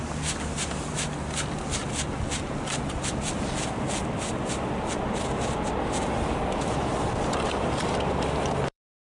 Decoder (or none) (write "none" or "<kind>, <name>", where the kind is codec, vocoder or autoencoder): vocoder, BigVGAN v2